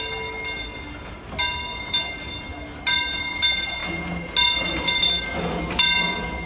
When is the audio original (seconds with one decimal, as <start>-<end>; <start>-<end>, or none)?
0.0-6.5